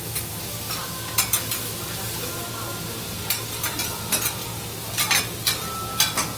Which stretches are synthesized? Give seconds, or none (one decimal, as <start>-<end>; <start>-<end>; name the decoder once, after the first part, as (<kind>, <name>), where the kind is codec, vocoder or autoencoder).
none